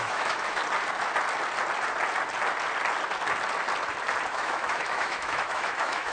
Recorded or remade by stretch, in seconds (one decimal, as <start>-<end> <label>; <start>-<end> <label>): 0.0-0.6 remade; 0.6-4.3 recorded; 4.3-6.1 remade